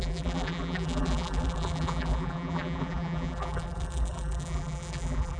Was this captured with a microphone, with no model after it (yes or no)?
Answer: no